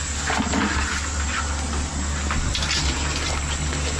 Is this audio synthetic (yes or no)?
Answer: no